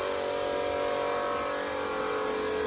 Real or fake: real